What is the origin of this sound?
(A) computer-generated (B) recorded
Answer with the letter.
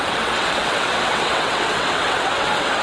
A